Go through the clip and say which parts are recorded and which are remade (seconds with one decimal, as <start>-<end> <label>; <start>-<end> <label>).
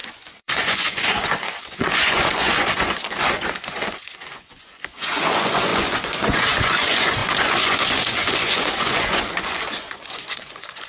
0.0-10.9 remade